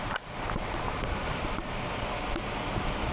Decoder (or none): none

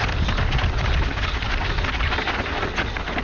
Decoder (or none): none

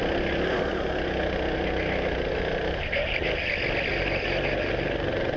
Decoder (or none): none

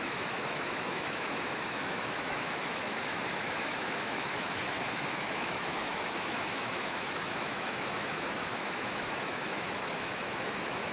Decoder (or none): autoencoder, DAC-VAE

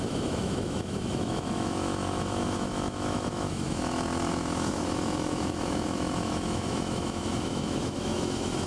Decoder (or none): autoencoder, DAC-VAE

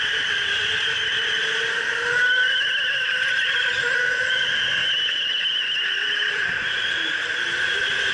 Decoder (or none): none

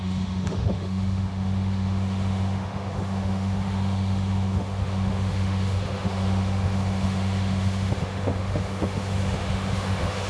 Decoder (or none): autoencoder, DAC-VAE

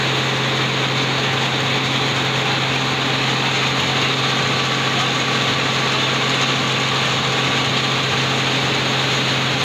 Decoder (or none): none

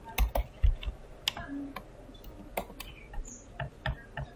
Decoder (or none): none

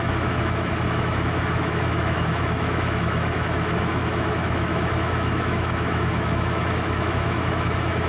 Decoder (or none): autoencoder, DAC-VAE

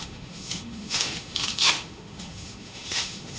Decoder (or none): autoencoder, DAC-VAE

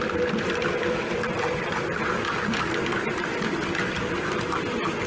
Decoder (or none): none